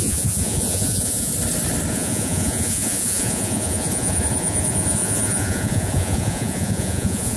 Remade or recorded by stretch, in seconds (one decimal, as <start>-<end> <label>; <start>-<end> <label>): 0.0-1.3 remade; 1.3-1.9 recorded; 1.9-7.4 remade